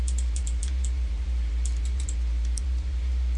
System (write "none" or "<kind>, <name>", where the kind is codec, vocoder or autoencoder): vocoder, BigVGAN v2